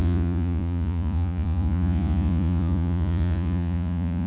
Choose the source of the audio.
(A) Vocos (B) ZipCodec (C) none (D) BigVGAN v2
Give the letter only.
A